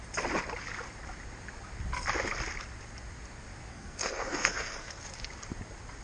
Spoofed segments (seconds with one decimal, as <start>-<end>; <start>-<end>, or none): 3.7-5.0